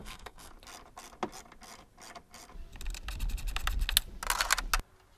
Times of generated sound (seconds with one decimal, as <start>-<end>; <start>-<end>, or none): 0.0-0.5